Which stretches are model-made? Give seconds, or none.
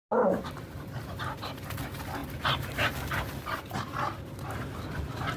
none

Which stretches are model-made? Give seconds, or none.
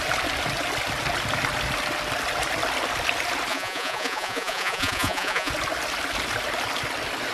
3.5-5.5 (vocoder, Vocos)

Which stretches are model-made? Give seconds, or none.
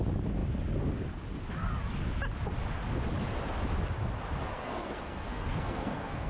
4.4-6.3 (codec, SNAC)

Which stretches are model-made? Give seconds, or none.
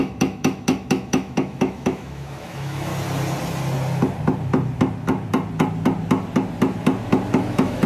0.0-2.9 (autoencoder, DAC-VAE); 7.3-7.9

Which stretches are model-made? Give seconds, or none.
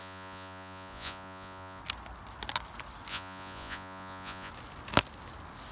0.0-1.8 (vocoder, Vocos); 3.1-4.5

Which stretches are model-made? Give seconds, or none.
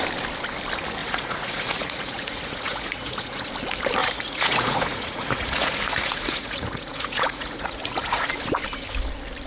1.0-3.5 (vocoder, Vocos); 4.0-8.3